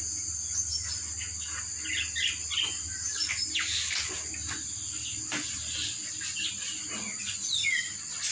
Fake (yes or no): no